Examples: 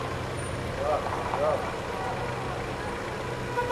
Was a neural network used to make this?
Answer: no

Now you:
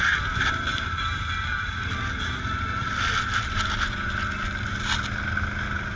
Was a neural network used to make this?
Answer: no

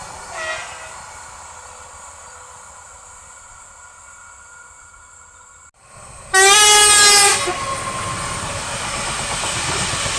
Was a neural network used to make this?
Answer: no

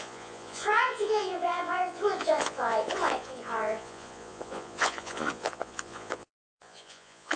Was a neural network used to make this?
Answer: yes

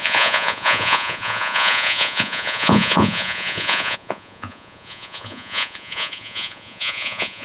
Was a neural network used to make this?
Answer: yes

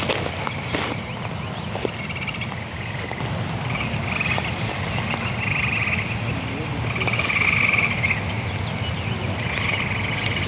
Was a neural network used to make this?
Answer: no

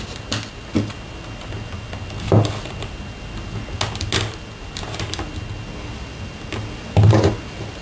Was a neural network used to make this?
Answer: no